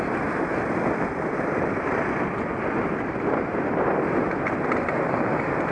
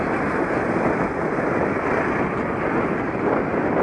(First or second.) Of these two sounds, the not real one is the first